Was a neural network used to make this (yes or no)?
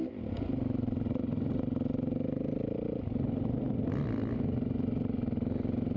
no